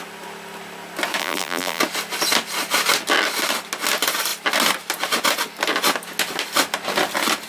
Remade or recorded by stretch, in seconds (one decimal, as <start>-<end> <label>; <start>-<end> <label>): 0.0-1.2 recorded; 1.2-1.8 remade; 1.8-7.5 recorded